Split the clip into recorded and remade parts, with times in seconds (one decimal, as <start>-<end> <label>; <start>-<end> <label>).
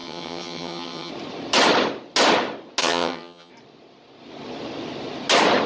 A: 0.0-1.1 remade; 1.1-2.8 recorded; 2.8-3.5 remade; 3.5-5.7 recorded